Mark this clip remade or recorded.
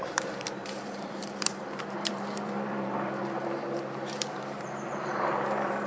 remade